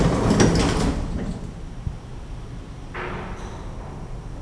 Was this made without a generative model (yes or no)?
yes